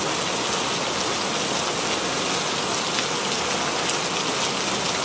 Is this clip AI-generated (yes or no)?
no